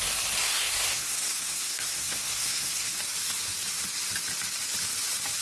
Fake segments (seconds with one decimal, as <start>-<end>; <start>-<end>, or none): 0.4-3.0